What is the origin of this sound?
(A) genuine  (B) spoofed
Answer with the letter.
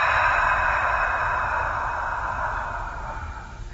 A